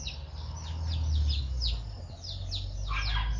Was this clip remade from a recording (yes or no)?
no